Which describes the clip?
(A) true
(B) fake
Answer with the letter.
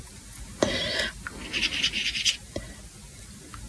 A